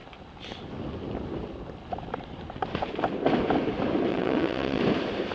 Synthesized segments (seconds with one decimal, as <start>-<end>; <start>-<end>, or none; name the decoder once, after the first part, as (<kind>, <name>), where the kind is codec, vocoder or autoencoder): 4.1-4.8 (vocoder, WaveNeXt)